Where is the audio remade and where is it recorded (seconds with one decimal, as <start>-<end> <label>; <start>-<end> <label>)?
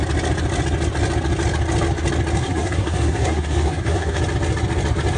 0.0-2.4 recorded; 2.4-4.2 remade; 4.2-5.2 recorded